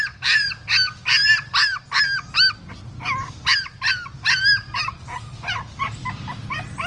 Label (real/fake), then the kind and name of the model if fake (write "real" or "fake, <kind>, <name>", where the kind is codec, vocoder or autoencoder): real